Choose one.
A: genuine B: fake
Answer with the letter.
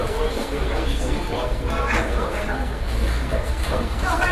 B